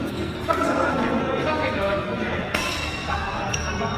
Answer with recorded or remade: remade